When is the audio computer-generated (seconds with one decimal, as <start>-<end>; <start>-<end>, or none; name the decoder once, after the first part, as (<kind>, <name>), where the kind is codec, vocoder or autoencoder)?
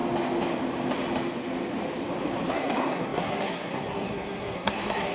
2.5-5.1 (codec, SNAC)